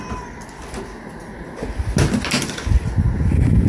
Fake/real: real